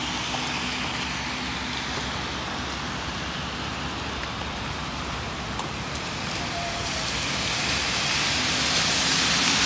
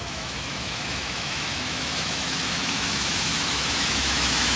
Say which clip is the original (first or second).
first